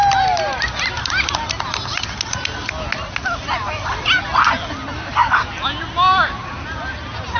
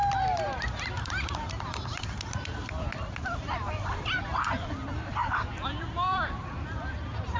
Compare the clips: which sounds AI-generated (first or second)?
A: second